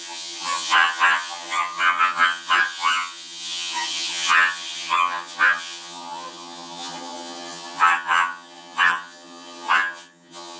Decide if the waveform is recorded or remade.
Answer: remade